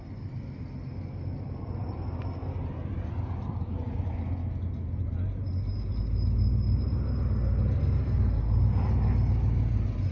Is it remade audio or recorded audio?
recorded